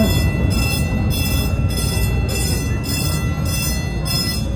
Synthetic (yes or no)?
no